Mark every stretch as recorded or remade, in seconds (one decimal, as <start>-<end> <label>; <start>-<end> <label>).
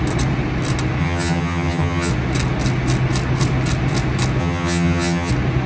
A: 0.0-1.0 recorded; 1.0-2.1 remade; 2.1-4.4 recorded; 4.4-5.3 remade; 5.3-5.7 recorded